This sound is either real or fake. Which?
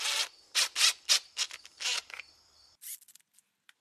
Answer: real